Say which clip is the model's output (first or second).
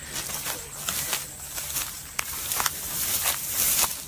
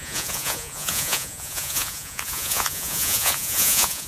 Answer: second